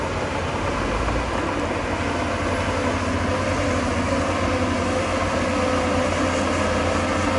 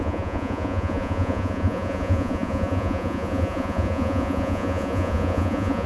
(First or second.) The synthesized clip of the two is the second